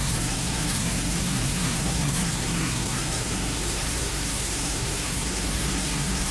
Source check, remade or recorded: remade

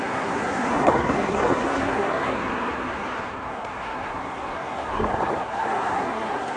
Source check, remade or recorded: remade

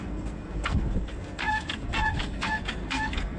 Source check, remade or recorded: remade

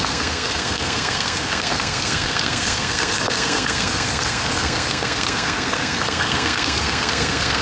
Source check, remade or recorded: remade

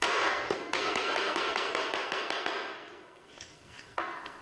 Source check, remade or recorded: remade